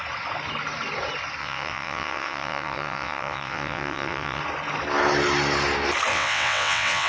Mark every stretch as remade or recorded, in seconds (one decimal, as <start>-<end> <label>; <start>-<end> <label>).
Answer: 0.0-1.4 recorded; 1.4-4.4 remade; 4.4-6.1 recorded; 6.1-7.1 remade